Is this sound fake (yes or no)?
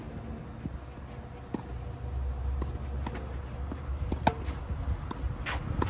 no